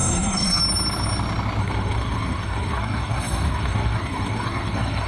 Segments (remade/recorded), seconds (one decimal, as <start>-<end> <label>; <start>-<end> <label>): 0.0-0.6 remade; 0.6-1.6 recorded; 1.6-5.1 remade